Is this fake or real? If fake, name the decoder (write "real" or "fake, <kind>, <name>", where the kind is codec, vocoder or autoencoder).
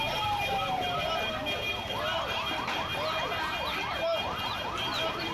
real